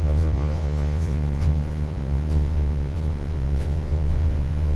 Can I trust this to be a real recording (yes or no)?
no